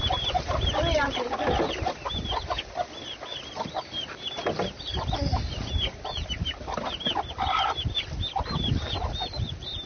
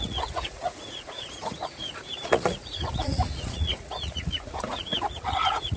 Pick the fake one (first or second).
second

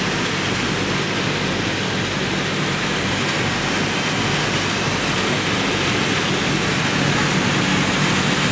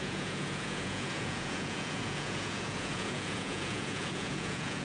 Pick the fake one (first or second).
second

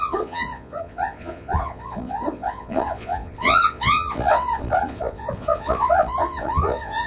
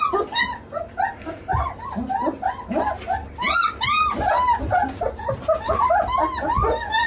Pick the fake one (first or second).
first